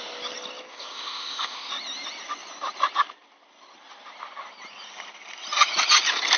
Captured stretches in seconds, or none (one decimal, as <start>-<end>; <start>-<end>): 0.0-0.7; 1.7-6.4